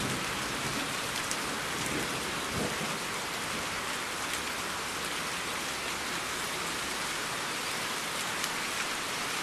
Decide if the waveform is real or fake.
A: real